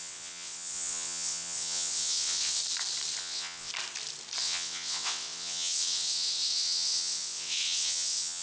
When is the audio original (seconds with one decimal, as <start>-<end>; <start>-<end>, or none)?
2.6-3.2; 3.7-4.4